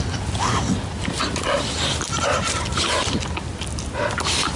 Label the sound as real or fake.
real